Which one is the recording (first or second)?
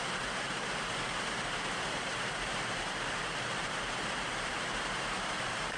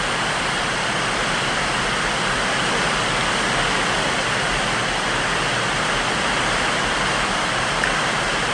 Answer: second